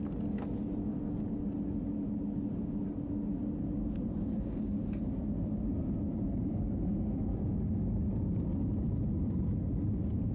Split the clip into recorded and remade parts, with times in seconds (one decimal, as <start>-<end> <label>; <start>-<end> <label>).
0.0-10.3 recorded